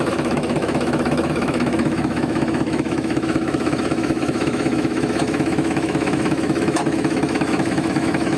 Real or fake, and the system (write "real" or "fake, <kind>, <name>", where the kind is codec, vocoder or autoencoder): fake, autoencoder, DAC-VAE